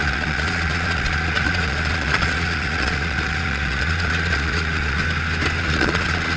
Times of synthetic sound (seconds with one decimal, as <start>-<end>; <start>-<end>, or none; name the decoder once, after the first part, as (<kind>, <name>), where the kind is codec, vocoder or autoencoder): 0.0-5.0 (vocoder, Vocos); 5.6-6.4